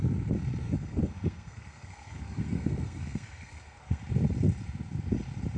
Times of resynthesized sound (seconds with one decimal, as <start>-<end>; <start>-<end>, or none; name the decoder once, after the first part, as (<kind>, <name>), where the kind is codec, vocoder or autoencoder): 0.6-4.0 (codec, SNAC)